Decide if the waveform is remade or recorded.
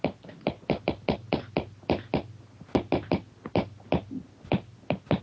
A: recorded